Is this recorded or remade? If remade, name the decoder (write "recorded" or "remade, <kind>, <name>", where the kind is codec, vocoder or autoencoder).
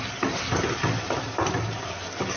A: recorded